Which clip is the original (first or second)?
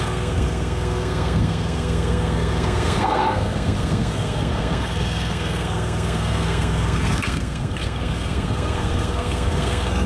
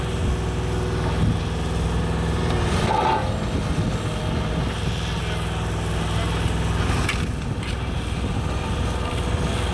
second